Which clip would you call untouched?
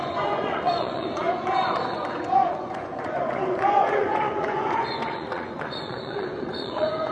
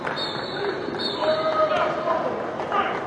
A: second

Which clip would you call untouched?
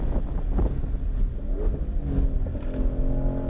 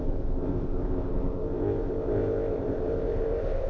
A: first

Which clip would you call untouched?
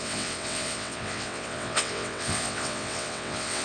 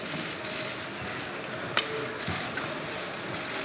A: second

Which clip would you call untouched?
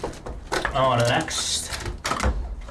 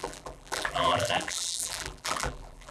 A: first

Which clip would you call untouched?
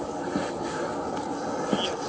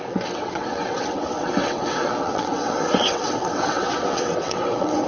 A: first